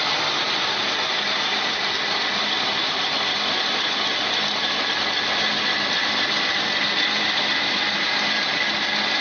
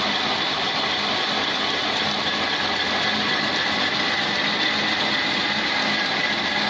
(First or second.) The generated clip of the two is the second